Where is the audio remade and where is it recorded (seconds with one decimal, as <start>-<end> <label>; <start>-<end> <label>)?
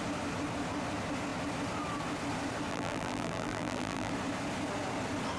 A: 0.0-2.7 recorded; 2.7-4.1 remade; 4.1-5.4 recorded